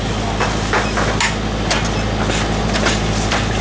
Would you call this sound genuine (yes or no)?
yes